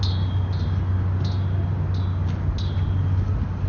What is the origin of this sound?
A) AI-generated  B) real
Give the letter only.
B